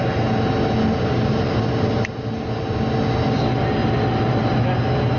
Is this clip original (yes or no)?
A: yes